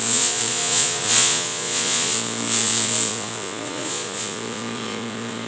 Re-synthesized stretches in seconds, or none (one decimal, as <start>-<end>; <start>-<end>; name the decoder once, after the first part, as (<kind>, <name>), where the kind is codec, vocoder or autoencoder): 0.0-5.5 (vocoder, Vocos)